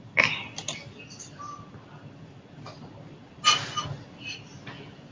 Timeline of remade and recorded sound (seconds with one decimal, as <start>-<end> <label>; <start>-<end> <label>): 0.0-5.1 recorded